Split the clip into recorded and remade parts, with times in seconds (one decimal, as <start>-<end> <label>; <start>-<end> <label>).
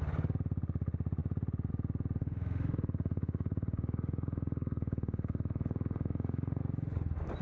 0.0-2.2 recorded; 2.2-6.6 remade; 6.6-7.4 recorded